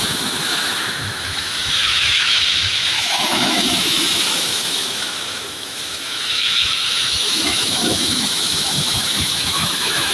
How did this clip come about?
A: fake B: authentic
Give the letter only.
A